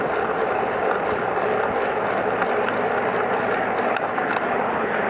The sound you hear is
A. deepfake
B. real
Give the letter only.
B